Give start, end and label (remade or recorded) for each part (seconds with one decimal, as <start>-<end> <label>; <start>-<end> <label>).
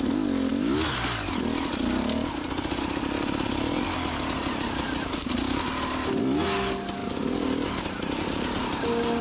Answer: 0.0-9.2 recorded